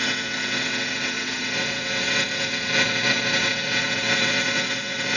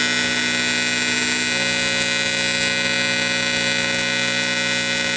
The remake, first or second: first